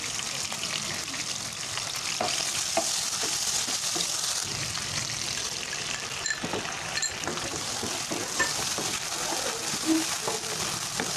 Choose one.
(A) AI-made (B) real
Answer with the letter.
B